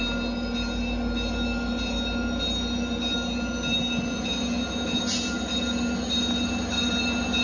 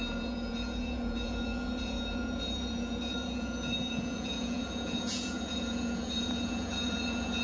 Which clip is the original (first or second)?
first